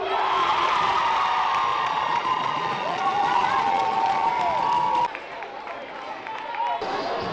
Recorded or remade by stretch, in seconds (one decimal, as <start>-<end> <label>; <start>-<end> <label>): 0.0-0.4 recorded; 0.4-1.0 remade; 1.0-1.7 recorded; 1.7-4.3 remade; 4.3-7.3 recorded